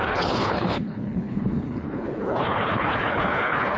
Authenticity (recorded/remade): remade